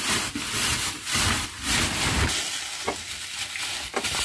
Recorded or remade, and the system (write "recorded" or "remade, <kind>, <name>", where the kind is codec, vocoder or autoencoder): recorded